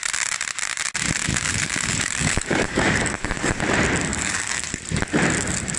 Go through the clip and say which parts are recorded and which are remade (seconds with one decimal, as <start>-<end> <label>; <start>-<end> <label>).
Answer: 0.0-1.3 recorded; 1.3-3.6 remade; 3.6-4.1 recorded; 4.1-4.7 remade; 4.7-5.8 recorded